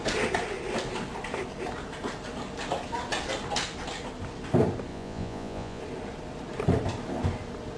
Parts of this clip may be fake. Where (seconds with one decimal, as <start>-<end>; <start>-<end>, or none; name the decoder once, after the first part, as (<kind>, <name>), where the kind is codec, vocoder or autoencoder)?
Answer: 4.9-5.8 (vocoder, Vocos)